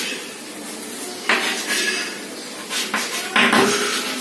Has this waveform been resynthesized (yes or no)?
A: no